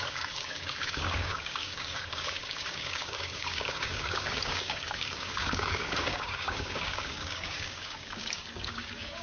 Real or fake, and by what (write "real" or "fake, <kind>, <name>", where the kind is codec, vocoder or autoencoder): fake, codec, DAC